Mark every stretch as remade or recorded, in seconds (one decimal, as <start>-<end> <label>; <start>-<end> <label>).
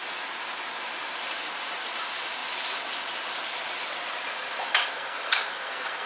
0.0-4.7 recorded; 4.7-6.1 remade